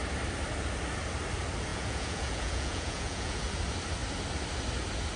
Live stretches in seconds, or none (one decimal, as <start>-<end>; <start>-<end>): 0.0-1.7; 3.6-5.2